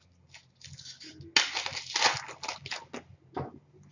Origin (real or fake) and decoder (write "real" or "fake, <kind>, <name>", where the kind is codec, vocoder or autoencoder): real